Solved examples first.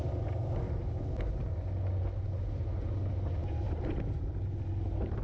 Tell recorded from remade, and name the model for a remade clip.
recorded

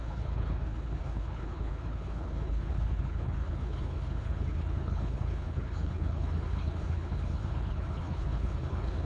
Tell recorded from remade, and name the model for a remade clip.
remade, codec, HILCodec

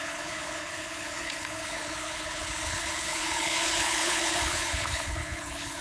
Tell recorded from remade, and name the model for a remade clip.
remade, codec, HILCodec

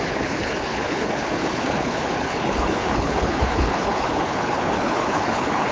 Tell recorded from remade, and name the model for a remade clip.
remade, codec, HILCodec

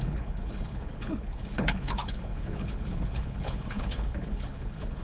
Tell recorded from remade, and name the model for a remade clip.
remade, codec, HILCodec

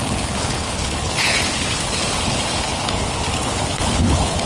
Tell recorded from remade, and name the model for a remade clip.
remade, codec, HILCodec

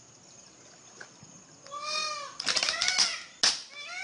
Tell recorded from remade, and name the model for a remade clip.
recorded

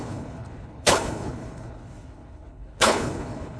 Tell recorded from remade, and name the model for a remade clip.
remade, codec, HILCodec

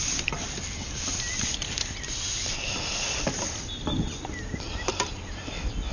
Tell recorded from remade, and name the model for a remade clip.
recorded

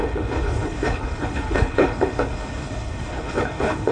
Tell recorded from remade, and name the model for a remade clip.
remade, codec, HILCodec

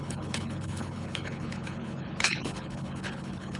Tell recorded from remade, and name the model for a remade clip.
remade, codec, HILCodec